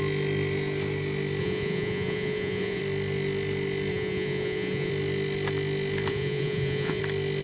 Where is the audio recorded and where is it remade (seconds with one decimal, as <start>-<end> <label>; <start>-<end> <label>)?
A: 0.0-1.4 recorded; 1.4-2.8 remade; 2.8-3.9 recorded; 3.9-4.9 remade; 4.9-6.1 recorded; 6.1-7.0 remade; 7.0-7.4 recorded